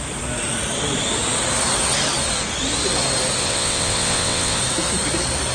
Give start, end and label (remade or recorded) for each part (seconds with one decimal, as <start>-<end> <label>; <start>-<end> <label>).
0.0-3.4 recorded; 3.4-4.6 remade; 4.6-5.5 recorded